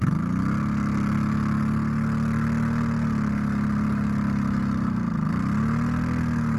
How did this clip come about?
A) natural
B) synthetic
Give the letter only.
A